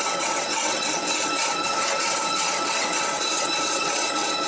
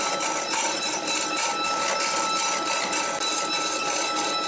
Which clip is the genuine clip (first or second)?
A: second